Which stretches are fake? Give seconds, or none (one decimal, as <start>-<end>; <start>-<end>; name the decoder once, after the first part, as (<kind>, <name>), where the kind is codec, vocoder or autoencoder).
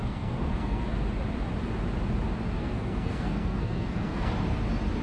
0.0-0.8 (codec, SNAC); 2.6-4.3